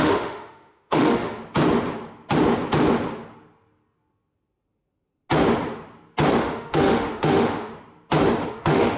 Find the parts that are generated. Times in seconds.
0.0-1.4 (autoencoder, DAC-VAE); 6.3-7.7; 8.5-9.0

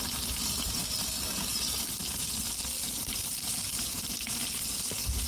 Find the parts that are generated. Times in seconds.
none

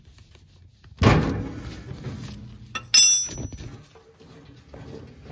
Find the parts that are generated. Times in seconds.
none

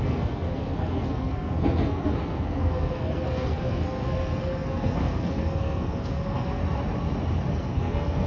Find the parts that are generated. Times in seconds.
0.0-6.6 (codec, SNAC); 7.5-8.3